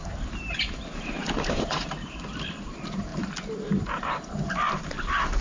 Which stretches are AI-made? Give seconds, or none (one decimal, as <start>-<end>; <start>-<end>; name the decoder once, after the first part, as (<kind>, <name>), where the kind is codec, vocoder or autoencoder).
0.0-3.1 (vocoder, BigVGAN v2); 3.9-5.4